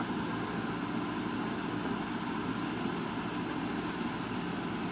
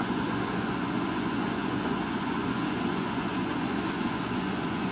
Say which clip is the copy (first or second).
second